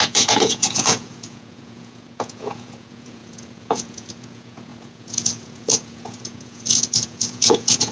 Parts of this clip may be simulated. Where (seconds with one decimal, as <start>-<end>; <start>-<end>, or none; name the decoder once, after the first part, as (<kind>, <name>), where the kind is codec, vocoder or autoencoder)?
0.0-7.9 (vocoder, Vocos)